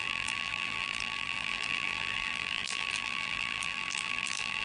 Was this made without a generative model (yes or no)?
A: no